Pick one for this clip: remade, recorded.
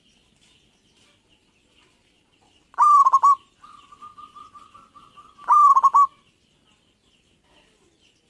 recorded